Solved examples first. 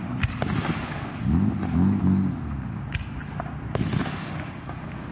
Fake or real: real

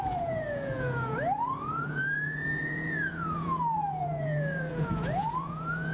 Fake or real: fake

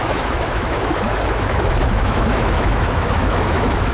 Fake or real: fake